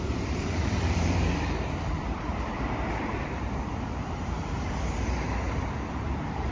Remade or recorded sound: remade